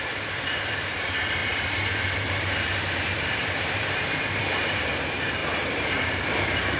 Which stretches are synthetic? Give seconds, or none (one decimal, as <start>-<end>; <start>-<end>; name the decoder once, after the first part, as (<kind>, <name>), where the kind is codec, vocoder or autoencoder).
0.0-6.8 (vocoder, BigVGAN v2)